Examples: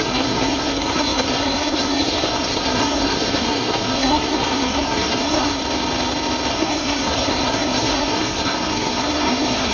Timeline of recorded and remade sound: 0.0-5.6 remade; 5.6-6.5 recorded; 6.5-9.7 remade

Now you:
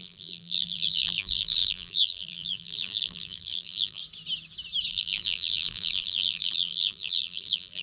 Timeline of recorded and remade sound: 0.0-4.0 remade; 4.0-4.9 recorded; 4.9-7.8 remade

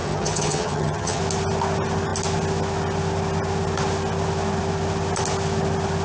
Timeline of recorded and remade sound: 0.0-1.2 remade; 1.2-6.0 recorded

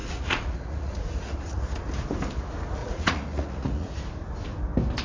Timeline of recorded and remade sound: 0.0-1.6 remade; 1.6-2.8 recorded; 2.8-3.9 remade; 3.9-5.0 recorded

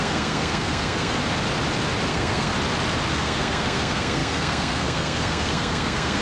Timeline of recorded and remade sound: 0.0-1.2 remade; 1.2-2.1 recorded; 2.1-2.5 remade; 2.5-3.1 recorded; 3.1-6.2 remade

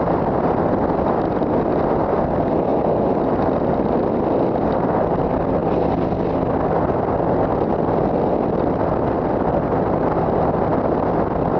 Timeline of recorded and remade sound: 0.0-11.6 recorded